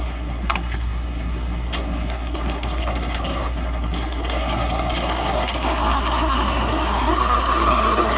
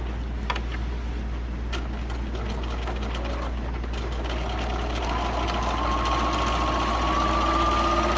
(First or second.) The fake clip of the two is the first